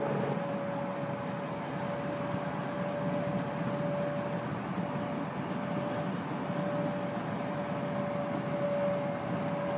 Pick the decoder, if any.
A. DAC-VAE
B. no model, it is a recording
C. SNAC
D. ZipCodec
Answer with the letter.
B